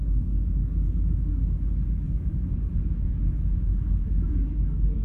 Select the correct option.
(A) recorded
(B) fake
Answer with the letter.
B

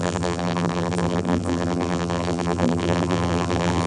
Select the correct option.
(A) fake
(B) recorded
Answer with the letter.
A